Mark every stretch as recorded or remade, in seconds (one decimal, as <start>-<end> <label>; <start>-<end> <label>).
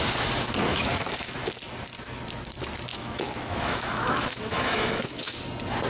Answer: 0.0-0.7 recorded; 0.7-1.5 remade; 1.5-2.9 recorded; 2.9-5.4 remade; 5.4-5.9 recorded